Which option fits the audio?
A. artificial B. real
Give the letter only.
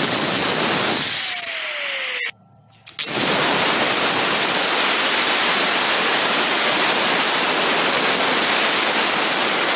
B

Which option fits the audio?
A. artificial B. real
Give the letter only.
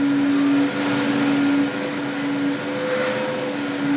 B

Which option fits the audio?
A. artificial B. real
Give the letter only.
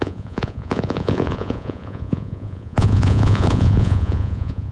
A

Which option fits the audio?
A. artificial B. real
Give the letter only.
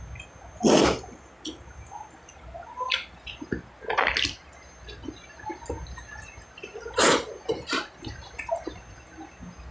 B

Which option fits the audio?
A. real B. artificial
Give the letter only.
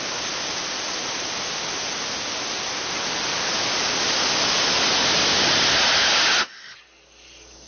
A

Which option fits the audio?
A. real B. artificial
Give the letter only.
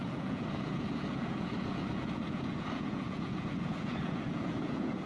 B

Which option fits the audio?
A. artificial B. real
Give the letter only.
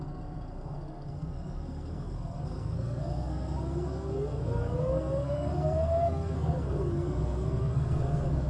A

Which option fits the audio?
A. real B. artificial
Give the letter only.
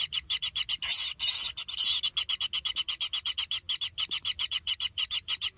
A